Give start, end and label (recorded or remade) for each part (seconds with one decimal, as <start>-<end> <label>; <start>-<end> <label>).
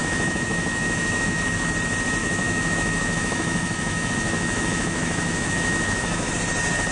0.0-1.7 remade; 1.7-2.2 recorded; 2.2-6.3 remade; 6.3-6.9 recorded